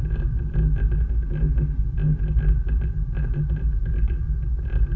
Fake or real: real